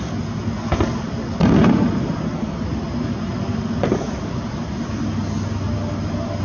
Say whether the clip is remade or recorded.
recorded